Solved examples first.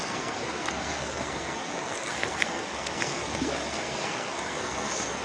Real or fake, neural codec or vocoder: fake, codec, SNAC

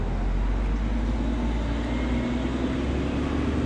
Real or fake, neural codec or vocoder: real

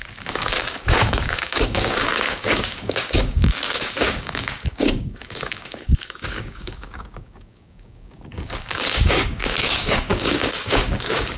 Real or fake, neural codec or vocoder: fake, codec, DAC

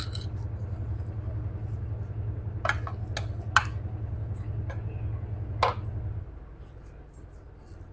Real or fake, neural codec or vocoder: real